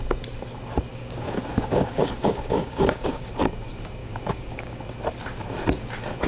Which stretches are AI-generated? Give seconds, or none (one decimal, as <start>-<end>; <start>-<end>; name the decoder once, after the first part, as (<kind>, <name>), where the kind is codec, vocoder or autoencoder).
0.9-3.3 (codec, DAC); 4.0-4.8